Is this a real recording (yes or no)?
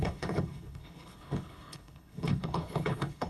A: no